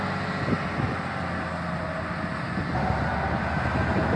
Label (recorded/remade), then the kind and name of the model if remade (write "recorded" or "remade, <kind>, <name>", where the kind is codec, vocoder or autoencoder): recorded